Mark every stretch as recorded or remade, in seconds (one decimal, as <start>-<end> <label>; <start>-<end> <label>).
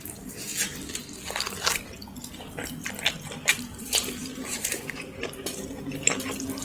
0.0-3.5 recorded; 3.5-5.6 remade; 5.6-6.6 recorded